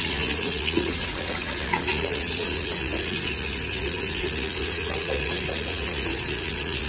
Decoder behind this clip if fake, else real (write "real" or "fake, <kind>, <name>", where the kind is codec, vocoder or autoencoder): fake, vocoder, Vocos